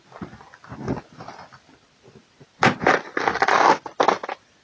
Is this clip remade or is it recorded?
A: recorded